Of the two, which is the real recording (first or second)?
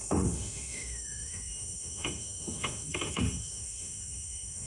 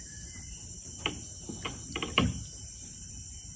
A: second